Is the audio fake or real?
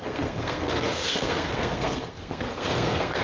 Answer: fake